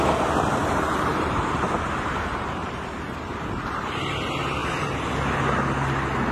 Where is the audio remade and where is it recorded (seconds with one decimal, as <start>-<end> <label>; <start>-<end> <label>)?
0.0-0.6 recorded; 0.6-1.6 remade; 1.6-2.3 recorded; 2.3-4.1 remade; 4.1-4.6 recorded; 4.6-5.1 remade; 5.1-6.3 recorded